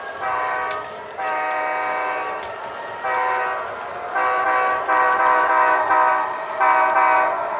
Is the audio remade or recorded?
recorded